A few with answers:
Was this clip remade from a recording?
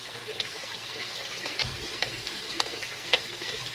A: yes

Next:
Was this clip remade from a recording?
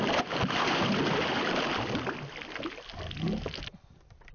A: no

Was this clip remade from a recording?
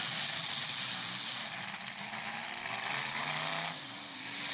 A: no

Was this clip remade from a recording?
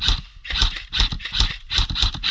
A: no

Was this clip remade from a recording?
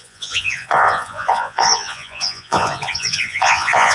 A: yes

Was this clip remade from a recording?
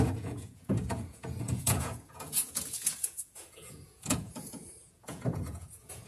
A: yes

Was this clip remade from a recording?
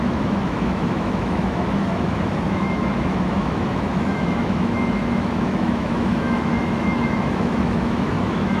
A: yes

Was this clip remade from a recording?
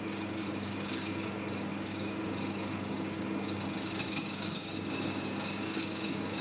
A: yes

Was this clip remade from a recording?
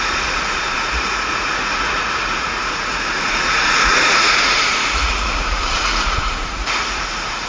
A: yes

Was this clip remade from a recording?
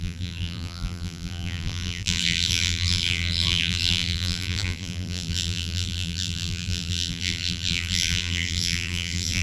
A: yes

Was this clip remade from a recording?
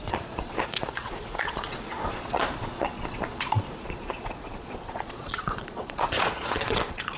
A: yes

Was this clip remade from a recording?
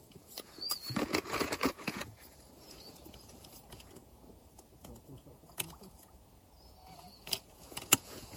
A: yes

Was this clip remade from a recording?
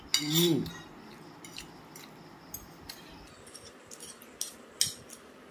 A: no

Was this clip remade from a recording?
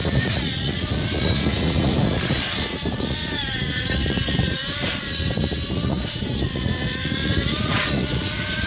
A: yes